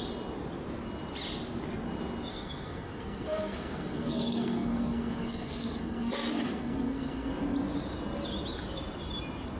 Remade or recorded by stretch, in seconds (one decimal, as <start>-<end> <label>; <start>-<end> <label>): 0.0-2.3 recorded; 2.3-7.3 remade; 7.3-9.6 recorded